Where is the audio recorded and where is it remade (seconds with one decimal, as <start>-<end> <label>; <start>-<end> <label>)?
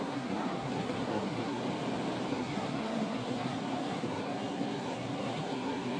0.0-1.6 remade; 1.6-2.3 recorded; 2.3-6.0 remade